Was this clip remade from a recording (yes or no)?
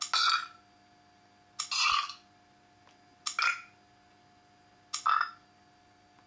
no